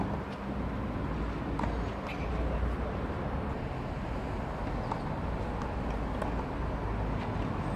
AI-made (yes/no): no